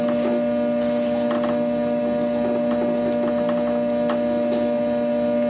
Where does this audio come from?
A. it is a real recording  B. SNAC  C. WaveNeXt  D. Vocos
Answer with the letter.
A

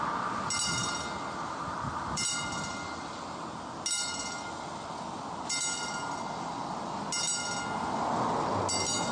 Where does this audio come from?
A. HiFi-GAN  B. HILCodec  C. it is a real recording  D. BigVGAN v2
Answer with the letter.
C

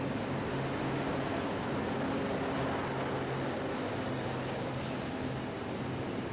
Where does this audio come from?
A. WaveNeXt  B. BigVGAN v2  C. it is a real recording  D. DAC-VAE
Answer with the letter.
C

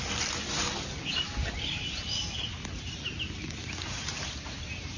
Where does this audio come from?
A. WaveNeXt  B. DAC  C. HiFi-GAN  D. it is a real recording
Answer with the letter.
D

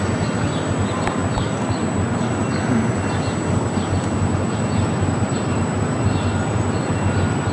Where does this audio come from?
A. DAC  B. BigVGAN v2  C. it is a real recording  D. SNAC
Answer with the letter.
C